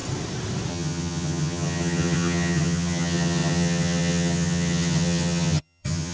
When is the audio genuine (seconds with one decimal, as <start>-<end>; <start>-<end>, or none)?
0.0-0.7